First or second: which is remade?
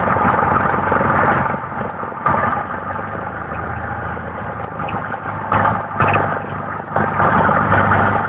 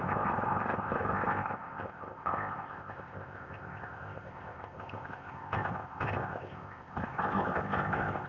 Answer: second